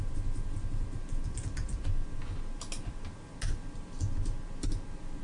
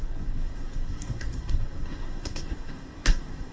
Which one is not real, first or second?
second